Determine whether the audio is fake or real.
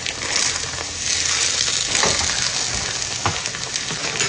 real